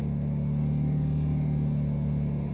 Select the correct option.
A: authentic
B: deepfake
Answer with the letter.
B